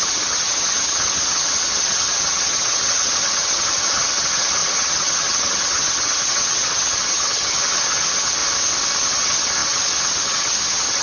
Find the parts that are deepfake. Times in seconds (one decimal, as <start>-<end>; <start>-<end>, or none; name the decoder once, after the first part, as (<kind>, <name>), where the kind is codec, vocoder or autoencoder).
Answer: 0.0-8.4 (vocoder, HiFi-GAN); 9.1-11.0